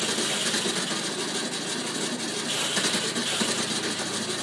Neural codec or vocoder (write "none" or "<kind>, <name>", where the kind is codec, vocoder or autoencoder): none